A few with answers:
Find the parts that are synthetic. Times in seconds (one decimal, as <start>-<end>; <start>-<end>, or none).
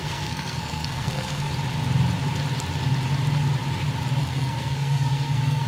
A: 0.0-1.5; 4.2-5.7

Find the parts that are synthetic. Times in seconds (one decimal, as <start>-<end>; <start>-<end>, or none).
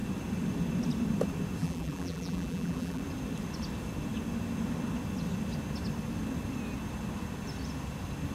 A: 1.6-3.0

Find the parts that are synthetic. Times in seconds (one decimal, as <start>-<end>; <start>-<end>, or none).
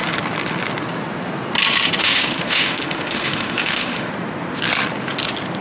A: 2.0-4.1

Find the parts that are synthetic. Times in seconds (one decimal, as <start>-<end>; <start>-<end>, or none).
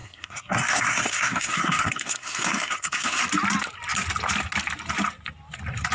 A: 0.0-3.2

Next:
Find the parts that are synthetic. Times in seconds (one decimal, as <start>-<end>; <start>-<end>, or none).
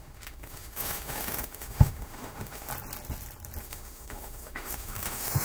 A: 0.0-2.7; 3.6-5.4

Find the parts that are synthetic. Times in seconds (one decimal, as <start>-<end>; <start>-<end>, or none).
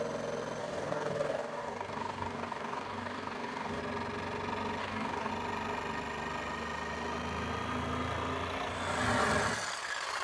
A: 0.6-3.8; 4.8-5.3